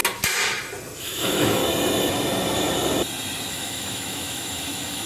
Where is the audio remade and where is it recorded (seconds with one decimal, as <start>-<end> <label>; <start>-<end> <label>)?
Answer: 0.0-1.0 recorded; 1.0-1.6 remade; 1.6-3.5 recorded; 3.5-5.1 remade